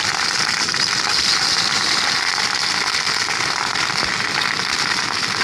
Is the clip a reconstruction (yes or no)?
no